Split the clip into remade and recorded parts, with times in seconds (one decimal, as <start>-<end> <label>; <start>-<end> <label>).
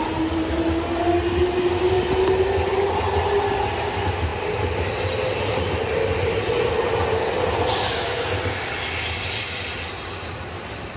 0.0-11.0 recorded